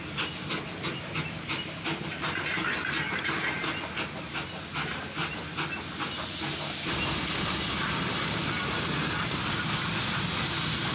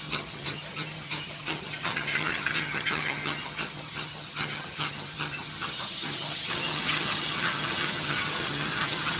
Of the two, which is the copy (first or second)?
second